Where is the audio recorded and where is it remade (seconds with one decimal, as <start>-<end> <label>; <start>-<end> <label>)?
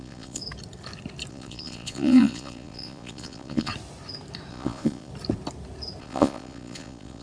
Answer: 0.0-0.4 remade; 0.4-1.3 recorded; 1.3-3.7 remade; 3.7-4.5 recorded; 4.5-5.1 remade; 5.1-6.0 recorded; 6.0-7.2 remade